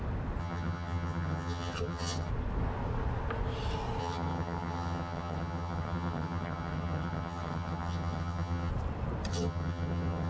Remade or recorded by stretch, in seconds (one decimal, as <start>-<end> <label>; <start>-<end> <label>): 0.0-0.4 recorded; 0.4-2.3 remade; 2.3-4.0 recorded; 4.0-8.7 remade; 8.7-9.3 recorded; 9.3-10.3 remade